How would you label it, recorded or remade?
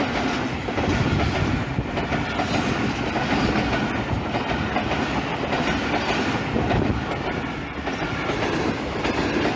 recorded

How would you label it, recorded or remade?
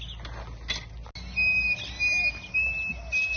recorded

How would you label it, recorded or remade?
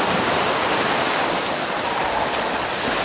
recorded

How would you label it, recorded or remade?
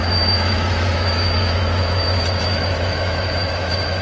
remade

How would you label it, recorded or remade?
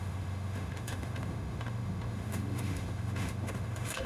remade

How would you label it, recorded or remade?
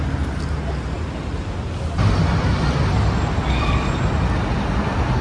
recorded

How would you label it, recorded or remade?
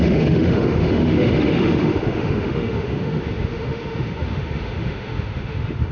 remade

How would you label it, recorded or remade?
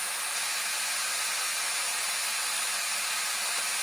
recorded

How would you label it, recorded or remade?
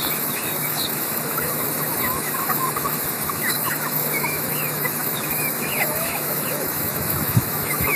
remade